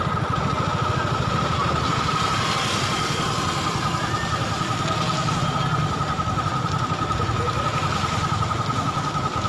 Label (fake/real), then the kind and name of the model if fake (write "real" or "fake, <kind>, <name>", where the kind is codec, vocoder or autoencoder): real